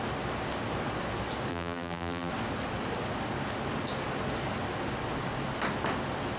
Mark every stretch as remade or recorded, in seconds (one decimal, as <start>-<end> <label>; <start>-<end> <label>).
0.0-1.5 recorded; 1.5-2.3 remade; 2.3-6.4 recorded